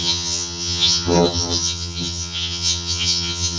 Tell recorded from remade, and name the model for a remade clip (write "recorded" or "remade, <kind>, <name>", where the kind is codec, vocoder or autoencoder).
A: remade, vocoder, HiFi-GAN